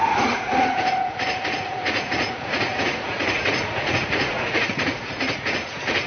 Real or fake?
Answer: fake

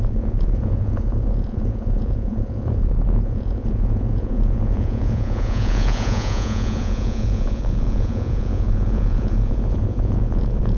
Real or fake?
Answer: fake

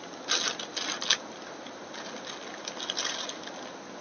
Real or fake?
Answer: real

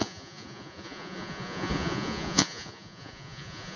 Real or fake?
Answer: fake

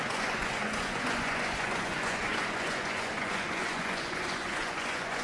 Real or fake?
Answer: fake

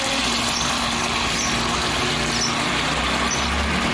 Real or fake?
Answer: real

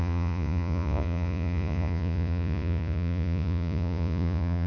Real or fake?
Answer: fake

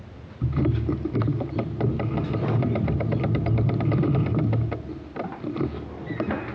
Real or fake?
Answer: real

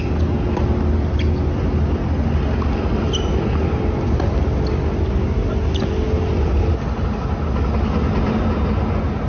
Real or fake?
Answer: real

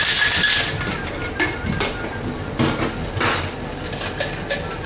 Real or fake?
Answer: real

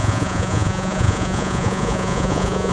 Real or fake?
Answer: fake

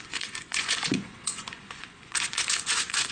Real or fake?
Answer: fake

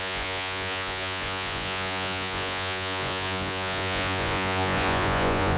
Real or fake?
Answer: fake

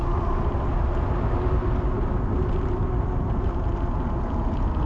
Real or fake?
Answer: real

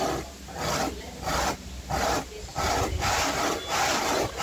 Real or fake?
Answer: real